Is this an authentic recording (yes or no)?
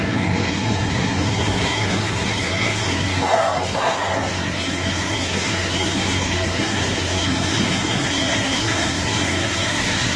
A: no